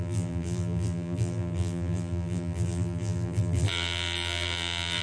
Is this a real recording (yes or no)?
no